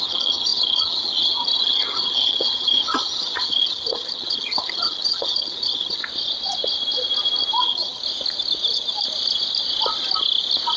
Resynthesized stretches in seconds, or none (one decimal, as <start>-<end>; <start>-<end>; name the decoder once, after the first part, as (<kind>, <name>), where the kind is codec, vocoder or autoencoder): 0.0-6.0 (vocoder, HiFi-GAN); 7.6-8.0